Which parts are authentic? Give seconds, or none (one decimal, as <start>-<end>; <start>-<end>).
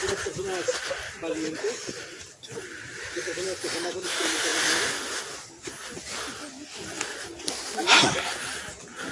0.0-9.1